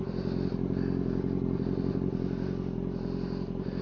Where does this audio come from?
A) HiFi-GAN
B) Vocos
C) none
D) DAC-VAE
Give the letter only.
C